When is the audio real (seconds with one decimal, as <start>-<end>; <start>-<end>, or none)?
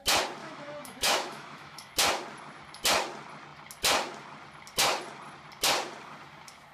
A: 0.0-0.4; 1.9-6.7